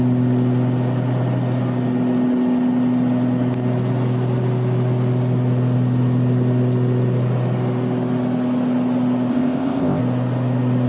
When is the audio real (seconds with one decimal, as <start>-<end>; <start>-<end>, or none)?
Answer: 0.0-9.3; 10.0-10.9